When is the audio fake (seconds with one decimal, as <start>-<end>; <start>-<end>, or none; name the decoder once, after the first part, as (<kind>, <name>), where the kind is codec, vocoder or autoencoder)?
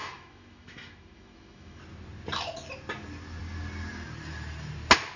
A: 0.0-1.8 (autoencoder, DAC-VAE)